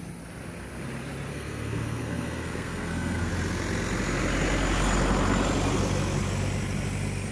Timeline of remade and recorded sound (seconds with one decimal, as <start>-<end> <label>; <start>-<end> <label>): 0.0-1.3 recorded; 1.3-3.3 remade; 3.3-7.3 recorded